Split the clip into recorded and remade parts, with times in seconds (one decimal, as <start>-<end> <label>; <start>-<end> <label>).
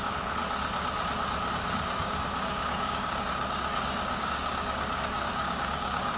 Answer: 0.0-0.4 remade; 0.4-1.5 recorded; 1.5-6.2 remade